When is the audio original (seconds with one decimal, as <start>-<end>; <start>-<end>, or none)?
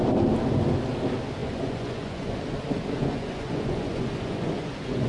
0.0-1.4; 2.3-3.0